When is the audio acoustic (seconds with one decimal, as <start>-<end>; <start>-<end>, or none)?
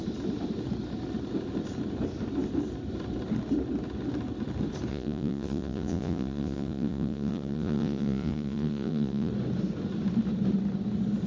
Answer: 0.0-4.9; 9.3-11.3